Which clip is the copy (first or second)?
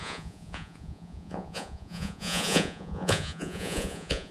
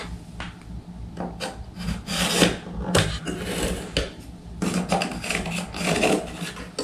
first